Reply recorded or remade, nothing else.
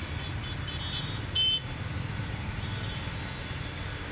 recorded